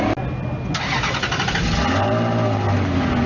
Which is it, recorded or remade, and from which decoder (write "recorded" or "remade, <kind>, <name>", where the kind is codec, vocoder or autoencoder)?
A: recorded